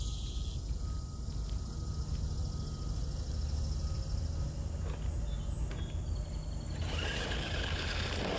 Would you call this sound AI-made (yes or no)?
no